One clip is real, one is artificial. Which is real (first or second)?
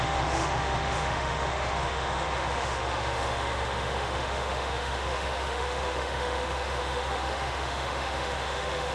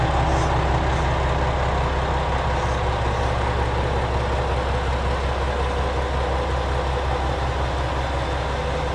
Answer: second